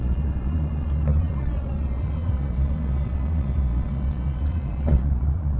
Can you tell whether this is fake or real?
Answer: fake